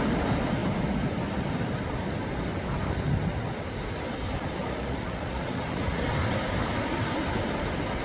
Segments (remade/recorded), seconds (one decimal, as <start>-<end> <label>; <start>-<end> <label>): 0.0-4.6 recorded; 4.6-6.0 remade; 6.0-8.0 recorded